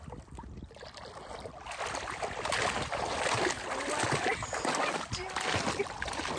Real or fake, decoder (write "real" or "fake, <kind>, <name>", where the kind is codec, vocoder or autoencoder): real